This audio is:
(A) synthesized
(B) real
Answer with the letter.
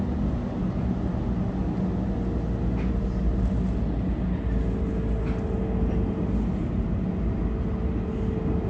B